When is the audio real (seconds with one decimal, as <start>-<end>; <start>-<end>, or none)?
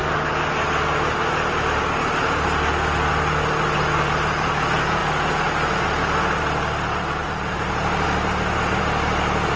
0.0-7.2; 8.8-9.6